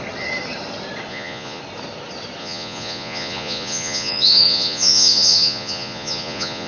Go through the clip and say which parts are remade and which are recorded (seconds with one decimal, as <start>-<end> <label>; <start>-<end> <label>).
0.0-1.1 recorded; 1.1-1.6 remade; 1.6-2.4 recorded; 2.4-6.7 remade